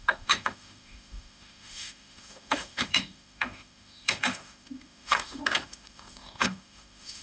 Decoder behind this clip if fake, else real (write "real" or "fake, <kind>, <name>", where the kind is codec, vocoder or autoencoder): fake, autoencoder, DAC-VAE